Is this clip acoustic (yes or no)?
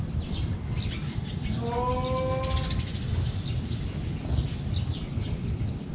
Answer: yes